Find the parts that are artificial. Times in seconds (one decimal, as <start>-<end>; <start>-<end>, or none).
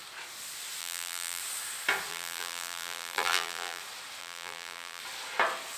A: 0.8-1.4; 2.1-3.8; 4.2-5.0